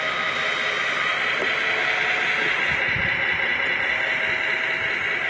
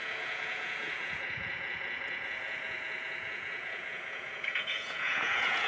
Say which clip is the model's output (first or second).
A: second